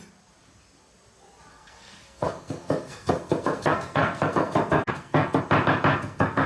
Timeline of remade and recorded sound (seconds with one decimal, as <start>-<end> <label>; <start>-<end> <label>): 0.0-1.5 recorded; 1.5-5.4 remade; 5.4-5.9 recorded; 5.9-6.5 remade